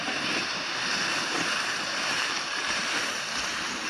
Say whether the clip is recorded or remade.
remade